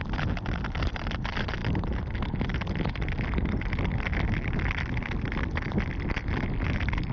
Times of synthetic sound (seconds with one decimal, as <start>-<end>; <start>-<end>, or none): none